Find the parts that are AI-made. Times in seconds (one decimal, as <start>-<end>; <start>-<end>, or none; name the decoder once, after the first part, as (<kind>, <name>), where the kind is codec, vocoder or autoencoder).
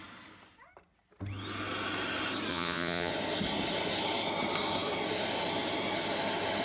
2.5-3.1 (vocoder, Vocos)